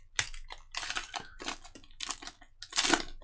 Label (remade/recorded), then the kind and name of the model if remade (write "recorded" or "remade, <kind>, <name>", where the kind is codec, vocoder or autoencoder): recorded